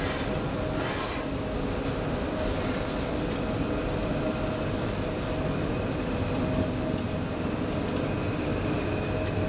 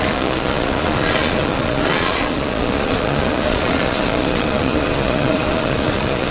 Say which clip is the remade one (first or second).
second